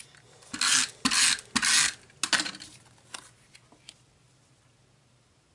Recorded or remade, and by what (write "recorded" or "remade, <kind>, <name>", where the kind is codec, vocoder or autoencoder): recorded